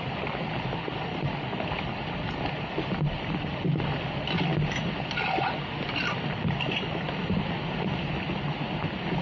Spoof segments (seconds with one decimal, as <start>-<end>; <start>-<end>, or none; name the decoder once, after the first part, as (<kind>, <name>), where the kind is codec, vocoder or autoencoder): none